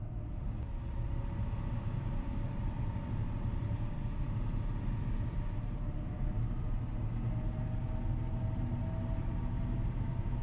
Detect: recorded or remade recorded